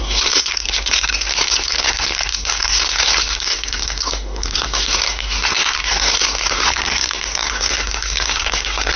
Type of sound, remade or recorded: remade